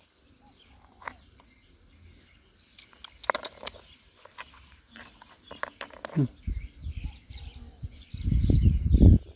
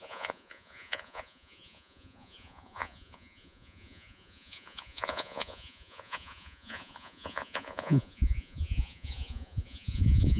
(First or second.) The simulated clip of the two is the second